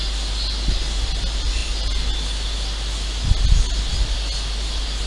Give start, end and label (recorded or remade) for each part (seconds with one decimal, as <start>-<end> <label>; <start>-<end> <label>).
0.0-5.1 recorded